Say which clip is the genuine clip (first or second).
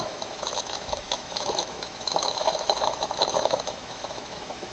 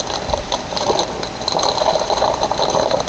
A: second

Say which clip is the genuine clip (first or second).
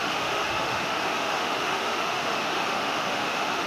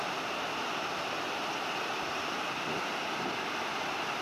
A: second